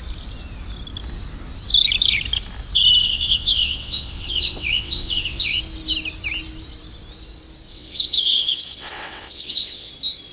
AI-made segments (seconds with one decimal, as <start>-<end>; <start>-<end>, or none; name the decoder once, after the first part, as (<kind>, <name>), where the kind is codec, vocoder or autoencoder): 3.0-5.6 (vocoder, WaveNeXt); 7.7-9.9